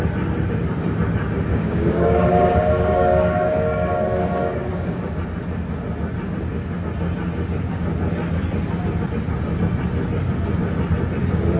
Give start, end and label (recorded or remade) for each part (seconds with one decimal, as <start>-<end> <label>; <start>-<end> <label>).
0.0-1.5 recorded; 1.5-5.1 remade; 5.1-11.6 recorded